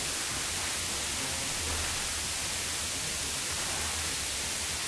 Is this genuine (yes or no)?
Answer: yes